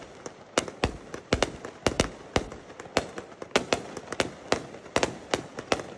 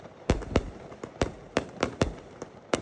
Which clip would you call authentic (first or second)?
first